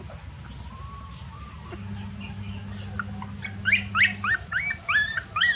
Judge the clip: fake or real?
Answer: real